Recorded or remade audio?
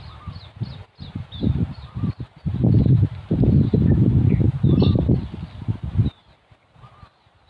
recorded